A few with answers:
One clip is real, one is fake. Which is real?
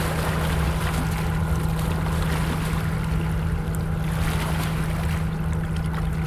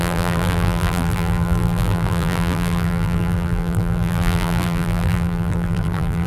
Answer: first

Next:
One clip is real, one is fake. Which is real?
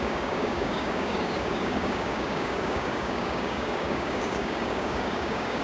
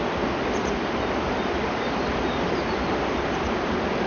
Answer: second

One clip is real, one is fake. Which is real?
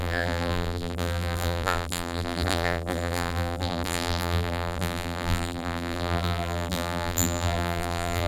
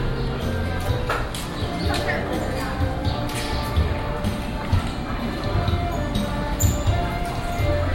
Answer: second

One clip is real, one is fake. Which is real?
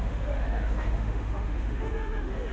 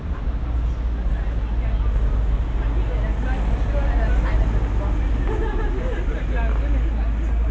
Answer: second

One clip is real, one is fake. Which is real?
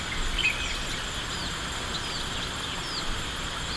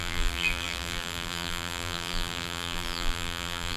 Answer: first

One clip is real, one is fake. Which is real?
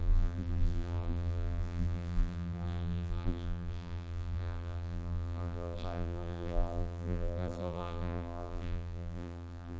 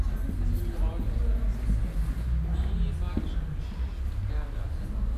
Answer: second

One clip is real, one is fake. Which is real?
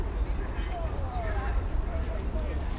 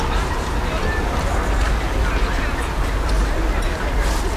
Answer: second